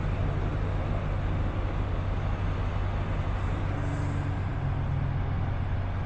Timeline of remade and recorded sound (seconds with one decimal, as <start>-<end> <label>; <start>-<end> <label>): 0.0-6.1 recorded